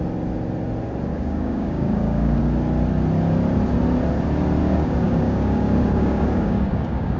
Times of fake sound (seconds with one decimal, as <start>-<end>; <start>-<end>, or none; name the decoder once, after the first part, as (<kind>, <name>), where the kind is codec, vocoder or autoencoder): 1.1-2.4 (codec, DAC); 4.6-7.2